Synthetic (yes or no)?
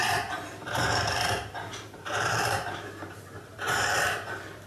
yes